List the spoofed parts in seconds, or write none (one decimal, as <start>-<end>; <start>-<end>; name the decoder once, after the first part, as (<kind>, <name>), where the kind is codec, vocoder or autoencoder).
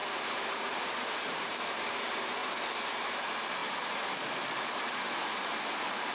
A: 0.0-2.4 (vocoder, BigVGAN v2); 3.0-6.1